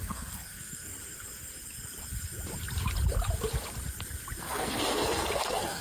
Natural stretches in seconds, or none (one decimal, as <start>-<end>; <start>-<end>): 0.9-4.4